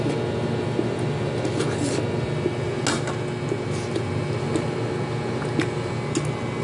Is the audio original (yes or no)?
yes